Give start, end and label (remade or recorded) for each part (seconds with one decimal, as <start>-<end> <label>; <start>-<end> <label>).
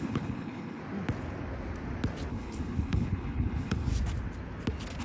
0.0-0.8 remade; 0.8-2.3 recorded; 2.3-3.9 remade; 3.9-5.0 recorded